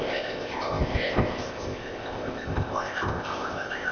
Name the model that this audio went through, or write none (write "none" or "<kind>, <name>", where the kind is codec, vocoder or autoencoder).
codec, ZipCodec